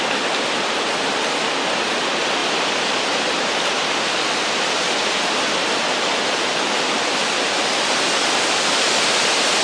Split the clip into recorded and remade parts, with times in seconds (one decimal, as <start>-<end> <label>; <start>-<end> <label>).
0.0-9.6 recorded